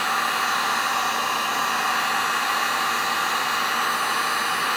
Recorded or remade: recorded